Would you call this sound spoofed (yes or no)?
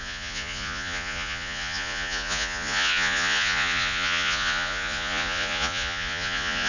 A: yes